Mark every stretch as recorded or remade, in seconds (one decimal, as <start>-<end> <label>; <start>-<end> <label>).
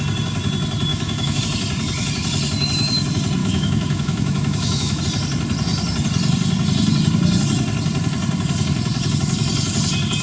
0.0-0.9 recorded; 0.9-1.4 remade; 1.4-3.4 recorded; 3.4-5.0 remade; 5.0-10.2 recorded